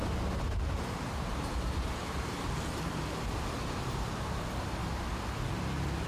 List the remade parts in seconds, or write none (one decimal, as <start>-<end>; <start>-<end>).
0.0-4.8; 5.5-6.1